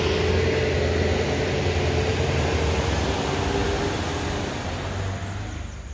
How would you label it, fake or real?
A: real